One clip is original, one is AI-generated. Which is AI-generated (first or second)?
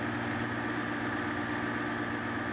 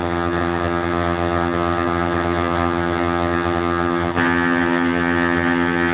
second